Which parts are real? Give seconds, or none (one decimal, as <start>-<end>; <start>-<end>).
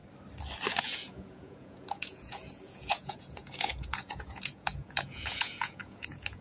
0.0-0.8